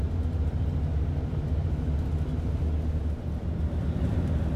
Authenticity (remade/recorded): remade